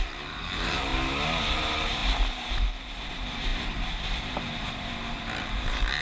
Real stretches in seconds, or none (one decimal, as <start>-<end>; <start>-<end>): 0.9-1.5